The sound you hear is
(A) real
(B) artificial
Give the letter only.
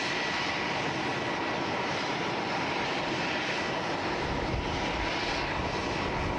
A